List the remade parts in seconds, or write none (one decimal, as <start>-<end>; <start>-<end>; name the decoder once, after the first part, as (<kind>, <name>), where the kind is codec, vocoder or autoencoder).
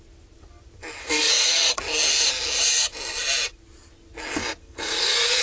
1.0-1.5 (codec, SNAC); 4.6-5.4